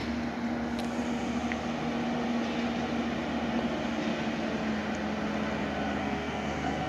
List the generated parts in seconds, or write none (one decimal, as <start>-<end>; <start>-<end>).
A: 6.0-6.9

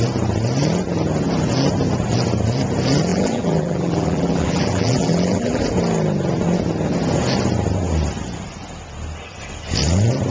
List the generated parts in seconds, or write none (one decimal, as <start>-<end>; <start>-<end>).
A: 3.1-5.6

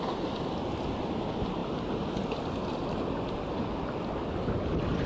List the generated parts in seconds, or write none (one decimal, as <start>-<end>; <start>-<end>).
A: none